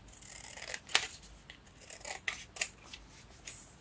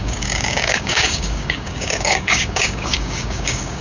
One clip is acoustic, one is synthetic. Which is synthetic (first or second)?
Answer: second